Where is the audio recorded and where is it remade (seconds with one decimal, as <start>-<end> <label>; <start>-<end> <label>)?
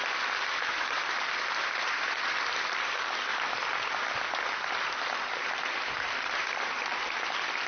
0.0-3.3 remade; 3.3-5.4 recorded; 5.4-7.7 remade